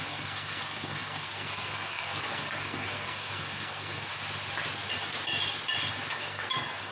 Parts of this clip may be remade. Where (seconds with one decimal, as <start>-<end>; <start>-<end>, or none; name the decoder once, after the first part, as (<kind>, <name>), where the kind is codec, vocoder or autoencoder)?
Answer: 0.0-4.1 (codec, SNAC); 6.1-6.9